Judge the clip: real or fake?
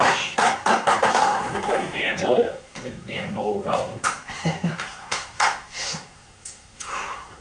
fake